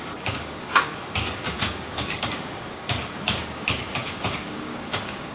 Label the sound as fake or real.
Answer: fake